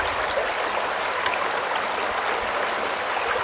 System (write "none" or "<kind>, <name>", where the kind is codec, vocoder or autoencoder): none